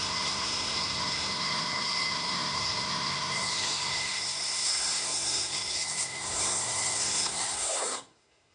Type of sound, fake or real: fake